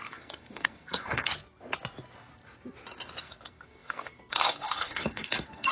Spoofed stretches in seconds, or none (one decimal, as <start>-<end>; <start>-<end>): 0.0-1.3; 3.2-5.7